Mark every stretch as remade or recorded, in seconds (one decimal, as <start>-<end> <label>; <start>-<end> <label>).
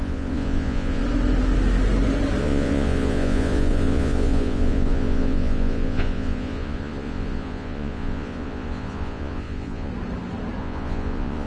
0.0-1.0 remade; 1.0-2.4 recorded; 2.4-9.9 remade; 9.9-10.6 recorded; 10.6-11.5 remade